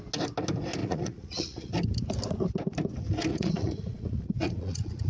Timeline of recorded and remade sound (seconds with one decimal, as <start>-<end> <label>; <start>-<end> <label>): 0.0-0.8 recorded; 0.8-1.7 remade; 1.7-3.3 recorded; 3.3-5.1 remade